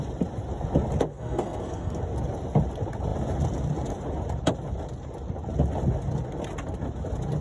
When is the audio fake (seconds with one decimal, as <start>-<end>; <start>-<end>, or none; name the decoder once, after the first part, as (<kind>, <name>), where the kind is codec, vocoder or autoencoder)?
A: 1.1-2.0 (codec, SNAC)